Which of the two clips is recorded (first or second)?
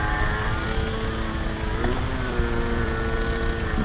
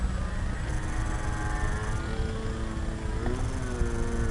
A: second